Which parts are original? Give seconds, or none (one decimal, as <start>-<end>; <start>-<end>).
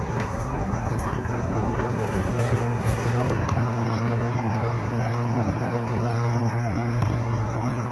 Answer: none